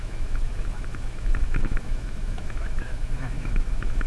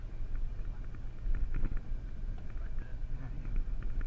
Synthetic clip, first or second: first